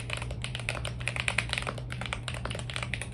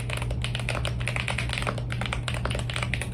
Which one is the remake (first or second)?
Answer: first